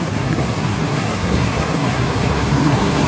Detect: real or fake fake